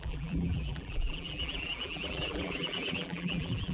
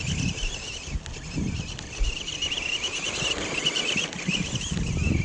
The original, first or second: second